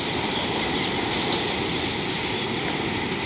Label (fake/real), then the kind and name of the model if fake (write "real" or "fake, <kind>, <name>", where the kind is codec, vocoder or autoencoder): real